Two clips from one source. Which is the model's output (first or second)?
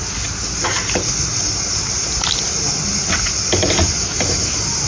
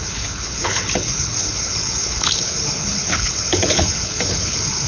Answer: second